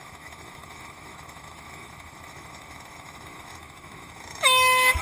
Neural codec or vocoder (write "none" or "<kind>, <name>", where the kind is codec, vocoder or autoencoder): autoencoder, DAC-VAE